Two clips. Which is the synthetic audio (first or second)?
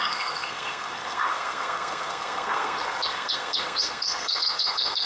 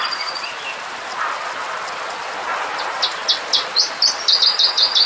first